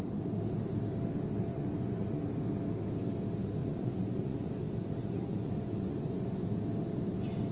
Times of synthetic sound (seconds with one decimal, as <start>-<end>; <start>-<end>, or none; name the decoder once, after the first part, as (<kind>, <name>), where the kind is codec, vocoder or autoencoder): 1.5-2.2 (vocoder, Vocos); 3.6-4.5; 5.0-6.3